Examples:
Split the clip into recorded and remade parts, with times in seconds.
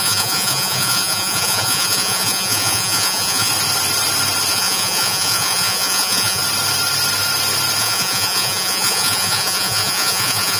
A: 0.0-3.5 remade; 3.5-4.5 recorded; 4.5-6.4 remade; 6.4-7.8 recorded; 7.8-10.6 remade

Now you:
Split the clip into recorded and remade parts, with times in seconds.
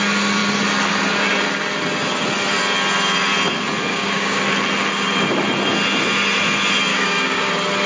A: 0.0-3.9 recorded; 3.9-4.4 remade; 4.4-6.9 recorded; 6.9-7.5 remade; 7.5-7.9 recorded